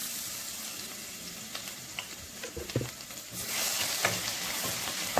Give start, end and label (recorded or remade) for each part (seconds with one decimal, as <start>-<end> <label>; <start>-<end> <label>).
0.0-5.2 recorded